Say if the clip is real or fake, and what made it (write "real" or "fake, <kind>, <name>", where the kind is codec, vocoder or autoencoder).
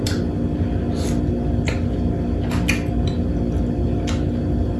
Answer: real